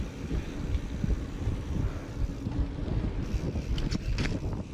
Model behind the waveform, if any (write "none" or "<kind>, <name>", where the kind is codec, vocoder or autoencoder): none